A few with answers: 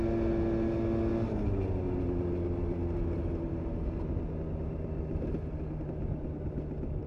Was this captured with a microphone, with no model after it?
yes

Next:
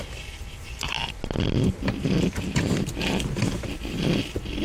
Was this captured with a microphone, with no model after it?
yes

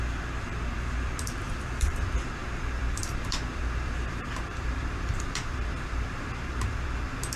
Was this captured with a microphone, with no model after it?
no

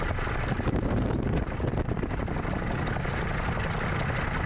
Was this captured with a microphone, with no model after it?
yes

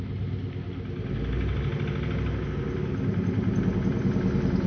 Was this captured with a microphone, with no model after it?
yes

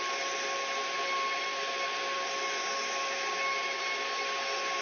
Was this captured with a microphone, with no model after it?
yes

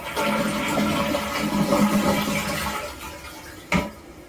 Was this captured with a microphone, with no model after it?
yes